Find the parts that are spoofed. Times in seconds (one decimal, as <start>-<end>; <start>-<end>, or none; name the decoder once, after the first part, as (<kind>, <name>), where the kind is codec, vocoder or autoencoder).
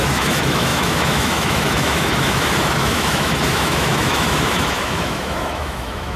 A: 0.0-6.2 (autoencoder, DAC-VAE)